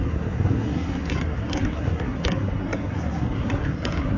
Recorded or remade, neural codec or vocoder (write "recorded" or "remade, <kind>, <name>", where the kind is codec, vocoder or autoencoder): remade, codec, SNAC